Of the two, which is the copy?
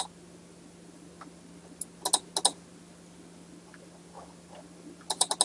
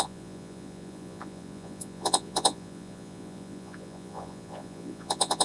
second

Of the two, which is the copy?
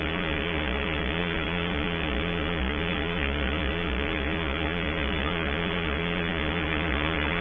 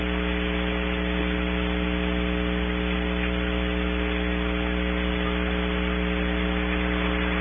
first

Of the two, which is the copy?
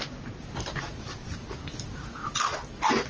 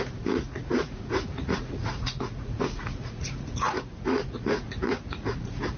second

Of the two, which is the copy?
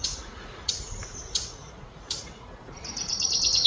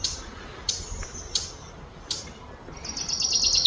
first